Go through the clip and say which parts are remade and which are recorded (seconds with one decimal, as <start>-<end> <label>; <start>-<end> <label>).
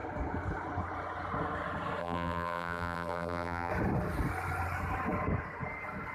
0.0-2.0 recorded; 2.0-3.7 remade; 3.7-6.1 recorded